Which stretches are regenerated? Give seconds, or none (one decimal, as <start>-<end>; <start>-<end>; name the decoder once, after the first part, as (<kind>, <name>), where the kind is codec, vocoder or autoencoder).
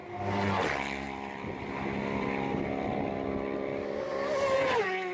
none